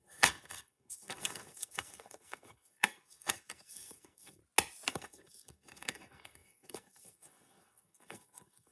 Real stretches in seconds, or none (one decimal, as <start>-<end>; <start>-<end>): 4.4-4.9